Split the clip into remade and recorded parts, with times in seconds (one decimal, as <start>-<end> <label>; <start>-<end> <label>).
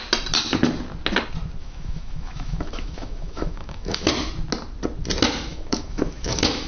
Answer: 0.0-1.6 recorded; 1.6-4.1 remade; 4.1-5.5 recorded; 5.5-6.7 remade